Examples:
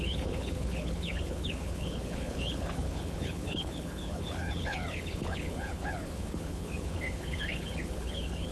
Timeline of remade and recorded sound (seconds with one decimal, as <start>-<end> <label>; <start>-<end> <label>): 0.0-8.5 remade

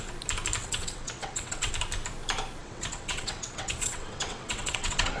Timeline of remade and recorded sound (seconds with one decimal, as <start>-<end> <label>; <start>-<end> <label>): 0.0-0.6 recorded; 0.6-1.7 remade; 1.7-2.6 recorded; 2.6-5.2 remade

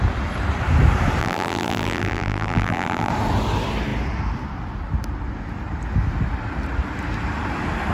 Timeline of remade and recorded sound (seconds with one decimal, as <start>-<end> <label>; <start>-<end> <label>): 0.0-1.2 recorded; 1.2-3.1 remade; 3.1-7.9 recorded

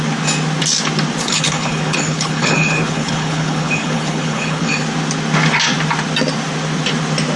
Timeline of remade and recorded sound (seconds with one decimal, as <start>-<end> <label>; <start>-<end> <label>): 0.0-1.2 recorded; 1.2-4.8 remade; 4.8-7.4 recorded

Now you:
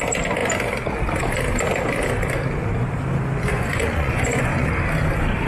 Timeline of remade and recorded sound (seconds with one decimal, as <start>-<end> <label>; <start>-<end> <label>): 0.0-3.5 recorded; 3.5-4.7 remade; 4.7-5.5 recorded

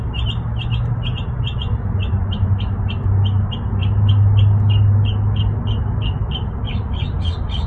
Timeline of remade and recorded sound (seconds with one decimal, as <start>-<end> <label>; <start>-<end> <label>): 0.0-7.7 recorded